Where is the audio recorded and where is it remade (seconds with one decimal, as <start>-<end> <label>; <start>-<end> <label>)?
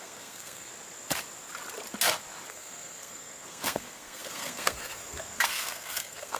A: 0.0-0.7 remade; 0.7-2.5 recorded; 2.5-6.4 remade